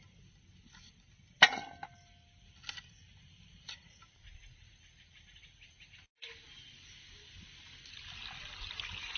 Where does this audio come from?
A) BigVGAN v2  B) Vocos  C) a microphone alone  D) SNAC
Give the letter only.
C